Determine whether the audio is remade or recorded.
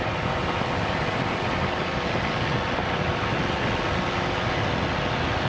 recorded